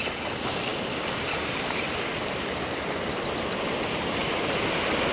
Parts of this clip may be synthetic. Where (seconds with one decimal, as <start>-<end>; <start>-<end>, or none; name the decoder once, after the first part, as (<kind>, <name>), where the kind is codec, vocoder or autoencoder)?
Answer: none